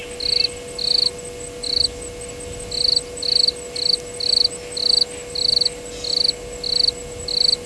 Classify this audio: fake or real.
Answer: real